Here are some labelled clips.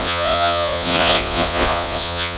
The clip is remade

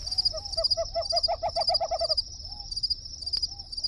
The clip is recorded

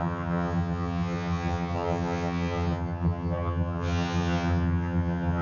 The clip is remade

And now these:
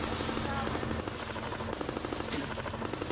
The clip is recorded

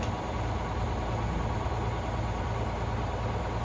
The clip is recorded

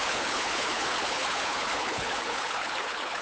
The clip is remade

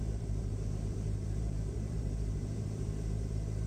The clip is remade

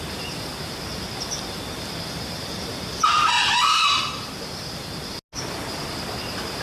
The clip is recorded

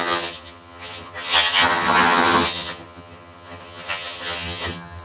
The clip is remade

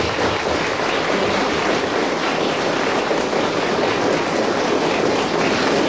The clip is recorded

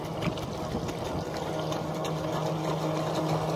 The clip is recorded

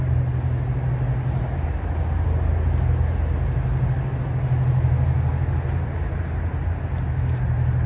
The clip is recorded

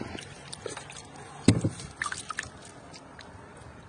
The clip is recorded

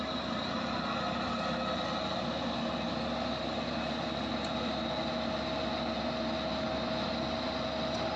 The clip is recorded